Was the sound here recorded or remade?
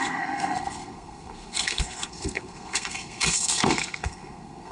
remade